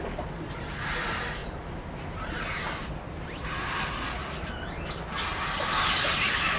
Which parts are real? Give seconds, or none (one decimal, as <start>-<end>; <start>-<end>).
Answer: 0.0-6.6